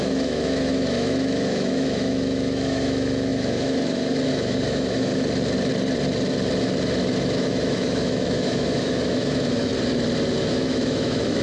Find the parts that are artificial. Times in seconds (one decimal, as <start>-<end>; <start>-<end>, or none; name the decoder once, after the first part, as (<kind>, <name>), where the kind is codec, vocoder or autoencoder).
0.0-5.1 (autoencoder, DAC-VAE); 7.2-9.7; 10.4-11.4